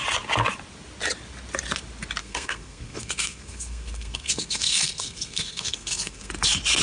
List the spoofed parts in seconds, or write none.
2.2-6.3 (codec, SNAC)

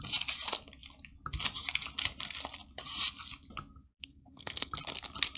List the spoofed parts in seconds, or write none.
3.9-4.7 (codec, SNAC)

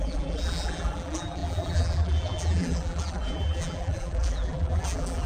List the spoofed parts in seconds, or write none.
0.0-5.3 (vocoder, BigVGAN v2)

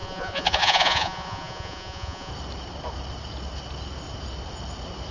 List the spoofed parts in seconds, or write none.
0.0-2.3 (vocoder, Vocos)

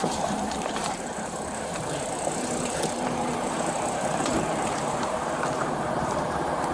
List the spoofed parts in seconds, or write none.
0.0-6.7 (vocoder, BigVGAN v2)

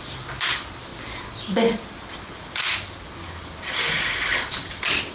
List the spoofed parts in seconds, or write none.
none